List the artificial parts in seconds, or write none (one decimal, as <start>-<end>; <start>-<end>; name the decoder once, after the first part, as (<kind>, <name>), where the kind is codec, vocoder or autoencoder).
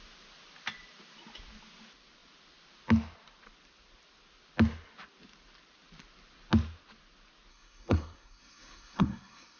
7.5-9.6 (codec, SNAC)